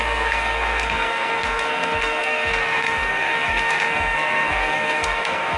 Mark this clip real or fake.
fake